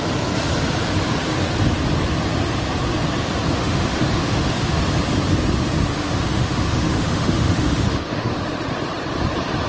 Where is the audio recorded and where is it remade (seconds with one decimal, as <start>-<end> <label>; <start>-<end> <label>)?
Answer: 0.0-3.6 recorded; 3.6-4.8 remade; 4.8-5.9 recorded; 5.9-8.3 remade; 8.3-9.7 recorded